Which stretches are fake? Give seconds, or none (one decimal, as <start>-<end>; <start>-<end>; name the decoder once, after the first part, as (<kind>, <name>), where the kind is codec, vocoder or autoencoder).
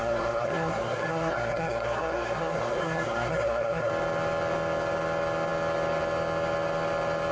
0.0-3.9 (codec, SNAC)